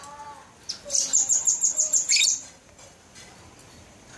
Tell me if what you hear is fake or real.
real